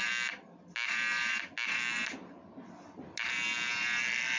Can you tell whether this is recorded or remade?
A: recorded